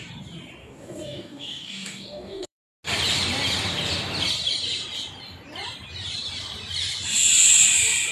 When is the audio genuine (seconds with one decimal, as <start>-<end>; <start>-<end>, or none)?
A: 0.0-0.6; 2.6-8.1